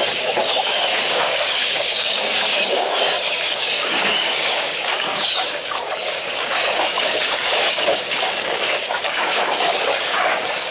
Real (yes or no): no